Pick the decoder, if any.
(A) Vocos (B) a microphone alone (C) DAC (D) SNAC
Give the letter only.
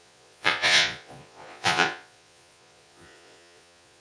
A